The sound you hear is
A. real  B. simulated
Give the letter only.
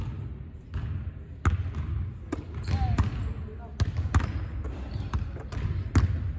A